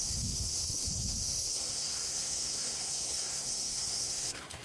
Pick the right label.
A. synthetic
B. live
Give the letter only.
A